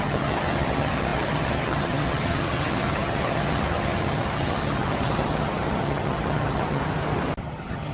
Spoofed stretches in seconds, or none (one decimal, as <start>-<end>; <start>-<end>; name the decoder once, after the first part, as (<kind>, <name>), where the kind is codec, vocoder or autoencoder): 0.0-6.8 (vocoder, HiFi-GAN); 7.4-7.9

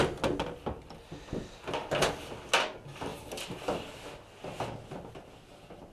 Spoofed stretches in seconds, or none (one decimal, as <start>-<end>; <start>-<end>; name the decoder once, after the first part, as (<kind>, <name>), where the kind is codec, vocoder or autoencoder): none

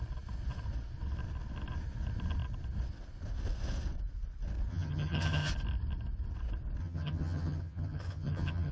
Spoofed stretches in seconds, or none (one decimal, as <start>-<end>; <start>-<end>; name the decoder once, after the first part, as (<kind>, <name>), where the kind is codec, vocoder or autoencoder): 4.7-5.5 (vocoder, HiFi-GAN); 6.8-8.7

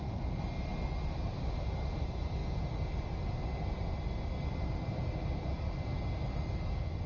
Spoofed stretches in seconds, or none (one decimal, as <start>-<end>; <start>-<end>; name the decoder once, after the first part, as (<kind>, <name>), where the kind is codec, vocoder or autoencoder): none

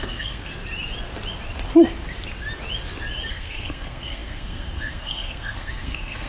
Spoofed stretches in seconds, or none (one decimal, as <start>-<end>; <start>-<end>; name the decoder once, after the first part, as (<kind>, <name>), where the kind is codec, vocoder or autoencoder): 0.0-0.5 (codec, SNAC); 3.3-6.3

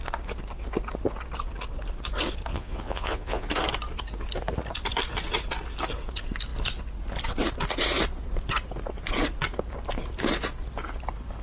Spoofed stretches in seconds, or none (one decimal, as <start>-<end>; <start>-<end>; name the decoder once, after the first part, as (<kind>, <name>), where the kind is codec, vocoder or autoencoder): 2.5-3.5 (vocoder, Vocos)

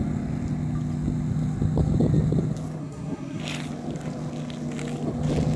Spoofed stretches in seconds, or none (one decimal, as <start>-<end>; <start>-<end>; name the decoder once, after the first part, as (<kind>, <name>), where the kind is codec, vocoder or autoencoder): 2.8-3.4 (codec, SNAC)

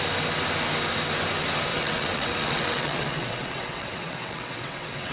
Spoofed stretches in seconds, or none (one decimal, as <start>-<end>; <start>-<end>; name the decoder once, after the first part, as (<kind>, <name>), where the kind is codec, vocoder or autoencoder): 1.7-5.1 (vocoder, WaveNeXt)